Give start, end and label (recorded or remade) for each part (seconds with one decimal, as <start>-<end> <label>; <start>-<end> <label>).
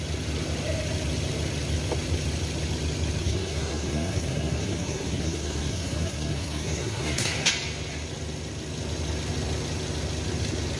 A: 0.0-3.2 recorded; 3.2-7.5 remade; 7.5-10.8 recorded